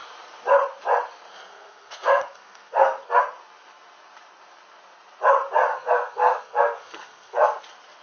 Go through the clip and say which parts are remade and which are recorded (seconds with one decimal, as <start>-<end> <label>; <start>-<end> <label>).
0.0-1.3 recorded; 1.3-3.2 remade; 3.2-5.7 recorded; 5.7-7.6 remade; 7.6-8.0 recorded